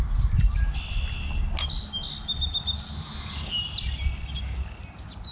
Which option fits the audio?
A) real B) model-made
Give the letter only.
A